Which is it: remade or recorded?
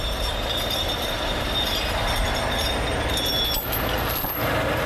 recorded